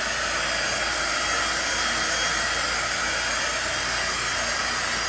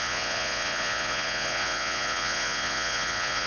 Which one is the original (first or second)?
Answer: first